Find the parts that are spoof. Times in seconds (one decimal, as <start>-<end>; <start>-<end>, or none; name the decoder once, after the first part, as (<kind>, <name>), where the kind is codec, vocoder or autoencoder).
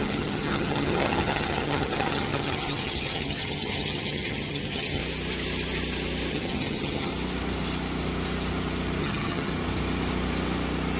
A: 0.0-5.0 (vocoder, HiFi-GAN); 6.3-7.1; 9.0-9.5